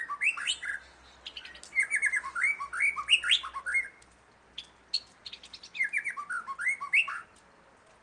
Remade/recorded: recorded